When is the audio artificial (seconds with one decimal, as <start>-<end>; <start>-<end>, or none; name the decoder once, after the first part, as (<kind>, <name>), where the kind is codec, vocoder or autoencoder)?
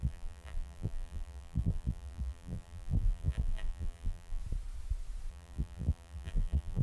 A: 0.0-4.4 (vocoder, BigVGAN v2); 5.3-6.8